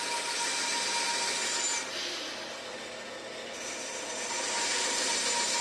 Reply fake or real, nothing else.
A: real